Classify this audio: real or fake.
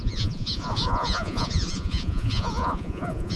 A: fake